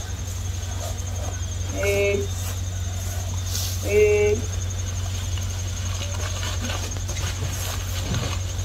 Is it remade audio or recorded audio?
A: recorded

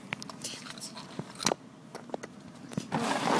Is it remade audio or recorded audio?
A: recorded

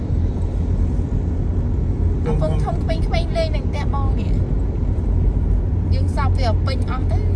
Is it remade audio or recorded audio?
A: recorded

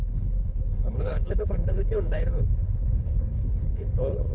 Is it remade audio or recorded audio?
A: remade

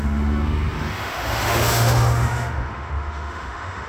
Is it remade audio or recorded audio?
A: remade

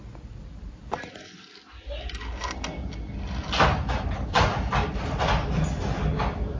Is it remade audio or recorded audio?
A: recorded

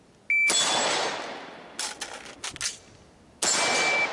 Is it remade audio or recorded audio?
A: recorded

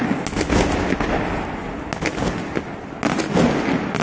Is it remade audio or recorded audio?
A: recorded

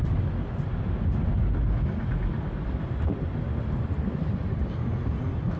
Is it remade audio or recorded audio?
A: recorded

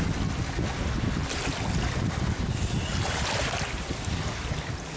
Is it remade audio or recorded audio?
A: recorded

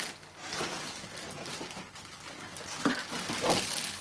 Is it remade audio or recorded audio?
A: recorded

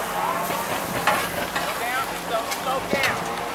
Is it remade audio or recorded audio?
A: recorded